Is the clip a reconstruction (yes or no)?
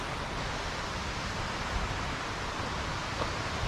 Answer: no